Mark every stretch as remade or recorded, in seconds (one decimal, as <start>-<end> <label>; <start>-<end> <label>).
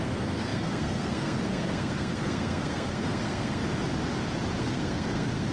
0.0-3.6 remade; 3.6-4.6 recorded; 4.6-5.5 remade